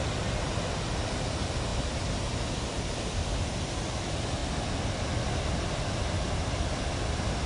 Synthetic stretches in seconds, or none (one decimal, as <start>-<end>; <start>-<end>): 1.7-3.3